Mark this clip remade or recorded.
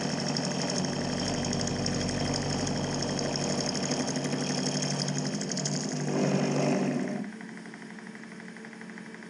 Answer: recorded